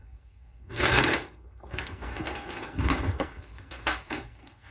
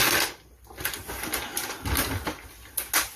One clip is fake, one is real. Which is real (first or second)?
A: second